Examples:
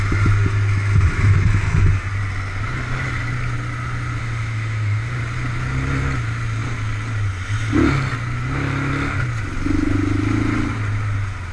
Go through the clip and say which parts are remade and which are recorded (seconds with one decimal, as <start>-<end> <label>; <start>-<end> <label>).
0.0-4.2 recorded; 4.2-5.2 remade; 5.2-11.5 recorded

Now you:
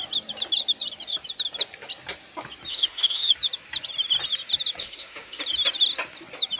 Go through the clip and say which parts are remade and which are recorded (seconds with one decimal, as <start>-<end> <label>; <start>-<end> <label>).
0.0-2.7 recorded; 2.7-3.3 remade; 3.3-4.8 recorded; 4.8-5.4 remade; 5.4-6.6 recorded

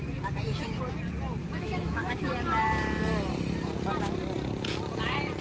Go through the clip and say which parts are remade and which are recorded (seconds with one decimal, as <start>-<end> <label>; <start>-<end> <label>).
0.0-1.4 recorded; 1.4-2.3 remade; 2.3-5.4 recorded